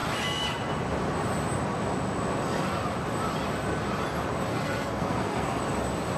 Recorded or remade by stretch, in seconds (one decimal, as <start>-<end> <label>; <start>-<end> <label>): 0.0-4.5 recorded; 4.5-5.6 remade; 5.6-6.2 recorded